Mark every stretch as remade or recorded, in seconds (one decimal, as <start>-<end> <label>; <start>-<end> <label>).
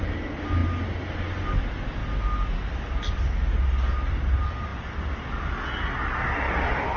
0.0-7.0 recorded